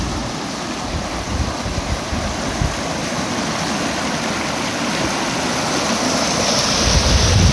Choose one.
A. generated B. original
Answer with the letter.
B